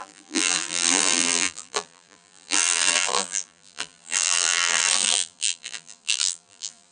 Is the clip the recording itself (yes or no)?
no